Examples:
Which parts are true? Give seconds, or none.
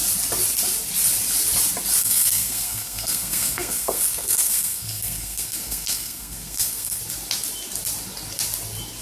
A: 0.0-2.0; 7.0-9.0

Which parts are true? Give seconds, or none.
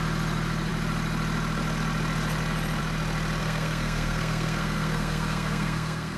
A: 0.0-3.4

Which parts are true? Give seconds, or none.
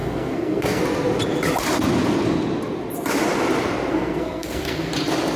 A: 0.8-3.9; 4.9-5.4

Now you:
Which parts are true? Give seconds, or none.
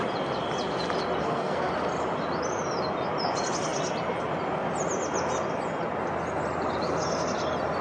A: 0.0-1.2; 1.7-7.8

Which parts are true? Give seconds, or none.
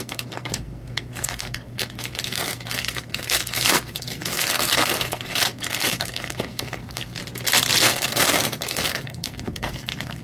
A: 7.2-7.8